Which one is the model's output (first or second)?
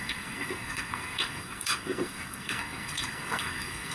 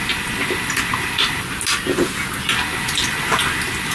first